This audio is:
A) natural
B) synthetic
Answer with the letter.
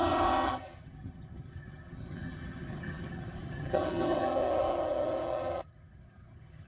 B